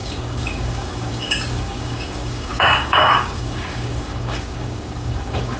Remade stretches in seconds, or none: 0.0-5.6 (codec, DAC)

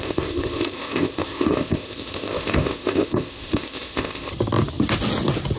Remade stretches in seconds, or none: 0.0-4.3 (codec, ZipCodec)

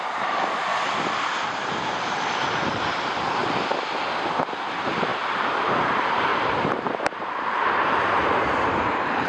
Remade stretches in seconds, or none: 0.0-0.7 (vocoder, BigVGAN v2); 1.7-3.4; 4.6-5.1; 5.8-9.3

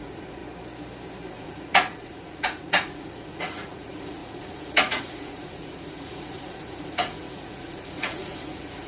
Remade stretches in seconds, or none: 0.0-0.4 (vocoder, Vocos); 1.3-8.9

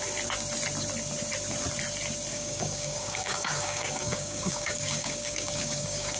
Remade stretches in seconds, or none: 2.3-6.2 (codec, DAC)

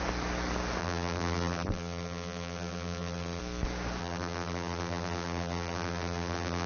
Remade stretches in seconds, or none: 0.8-3.4 (vocoder, BigVGAN v2); 4.0-6.7

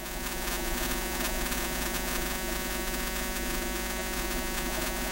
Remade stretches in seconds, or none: 0.0-5.1 (vocoder, Vocos)

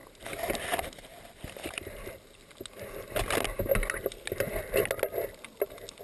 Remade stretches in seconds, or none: none